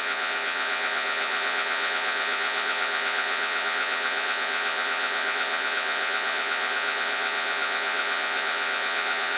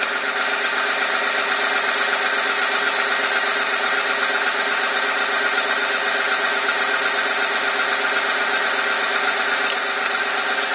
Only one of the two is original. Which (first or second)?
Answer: second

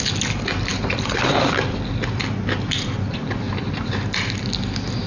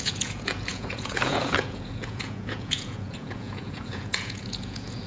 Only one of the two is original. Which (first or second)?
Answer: first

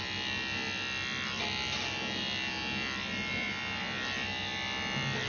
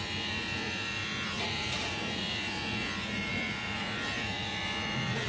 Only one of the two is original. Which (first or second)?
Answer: first